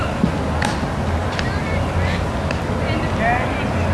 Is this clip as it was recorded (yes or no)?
yes